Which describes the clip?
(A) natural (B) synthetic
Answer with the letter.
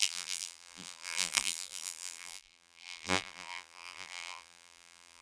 B